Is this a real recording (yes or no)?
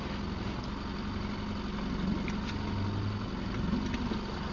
yes